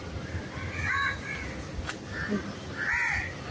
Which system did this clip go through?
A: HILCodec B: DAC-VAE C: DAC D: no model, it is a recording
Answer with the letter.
D